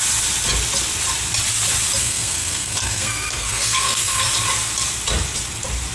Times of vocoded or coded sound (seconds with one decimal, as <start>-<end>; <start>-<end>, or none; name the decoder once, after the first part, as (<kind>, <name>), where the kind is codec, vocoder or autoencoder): 2.0-4.3 (codec, SNAC)